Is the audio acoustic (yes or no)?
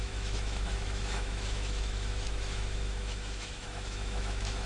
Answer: no